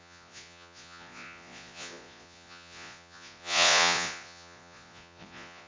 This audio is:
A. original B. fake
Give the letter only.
B